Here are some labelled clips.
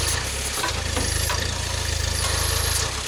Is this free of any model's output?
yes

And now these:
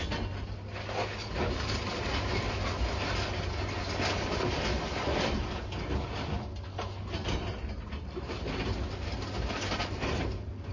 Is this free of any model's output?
yes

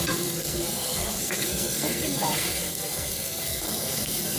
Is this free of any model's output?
no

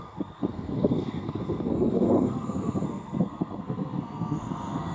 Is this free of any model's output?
no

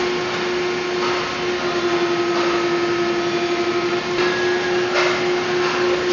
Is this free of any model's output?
yes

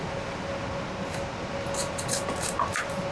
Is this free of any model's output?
yes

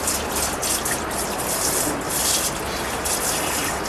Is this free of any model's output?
yes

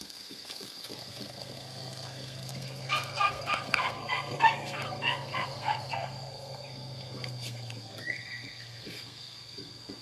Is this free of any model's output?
no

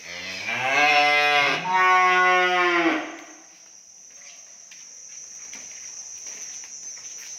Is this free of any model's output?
yes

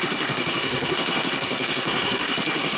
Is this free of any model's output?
no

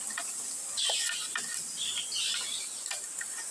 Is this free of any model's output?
yes